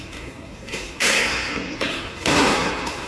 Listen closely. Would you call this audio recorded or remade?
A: remade